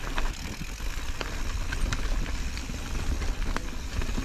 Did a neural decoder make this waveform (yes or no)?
no